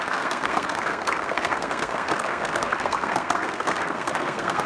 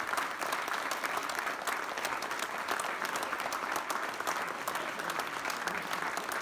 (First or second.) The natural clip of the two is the second